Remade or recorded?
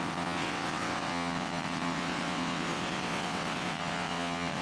remade